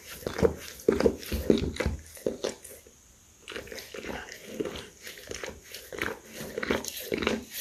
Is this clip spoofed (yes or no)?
no